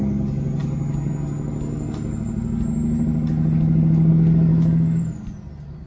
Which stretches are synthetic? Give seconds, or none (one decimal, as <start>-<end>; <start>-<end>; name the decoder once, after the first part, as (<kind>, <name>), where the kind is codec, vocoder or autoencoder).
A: 4.5-5.0 (autoencoder, DAC-VAE)